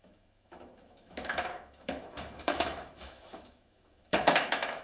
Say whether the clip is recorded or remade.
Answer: remade